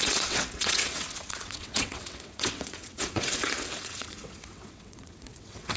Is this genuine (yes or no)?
no